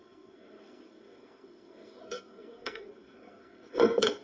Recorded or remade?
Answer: remade